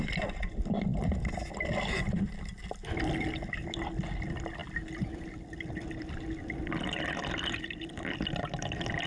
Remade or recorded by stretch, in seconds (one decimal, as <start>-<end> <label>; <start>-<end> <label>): 0.0-9.1 recorded

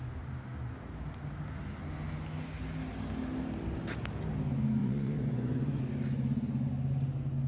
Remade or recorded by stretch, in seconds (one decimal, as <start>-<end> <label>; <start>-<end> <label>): 0.0-4.8 recorded; 4.8-5.8 remade; 5.8-7.5 recorded